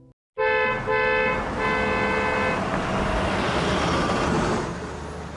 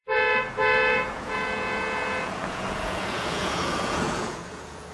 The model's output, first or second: second